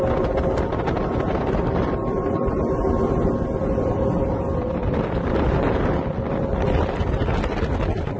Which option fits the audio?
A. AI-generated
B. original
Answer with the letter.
B